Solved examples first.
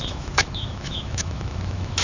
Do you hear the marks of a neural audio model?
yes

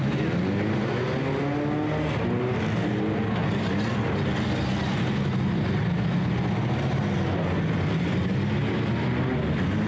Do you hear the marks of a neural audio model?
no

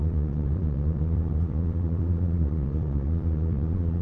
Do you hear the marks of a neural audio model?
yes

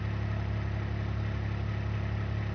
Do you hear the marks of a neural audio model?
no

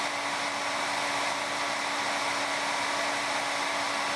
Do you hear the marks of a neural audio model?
no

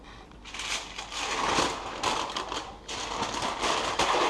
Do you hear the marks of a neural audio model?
no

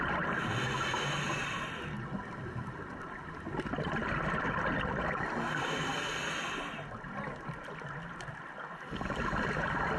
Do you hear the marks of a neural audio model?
no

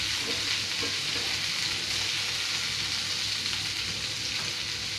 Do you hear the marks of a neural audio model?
no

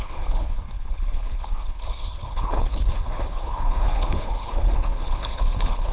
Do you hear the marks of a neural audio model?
yes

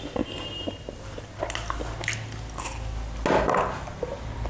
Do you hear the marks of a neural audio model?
no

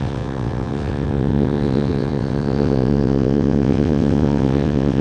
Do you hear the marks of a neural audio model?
yes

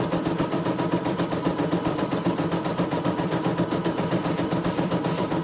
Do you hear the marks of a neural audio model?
yes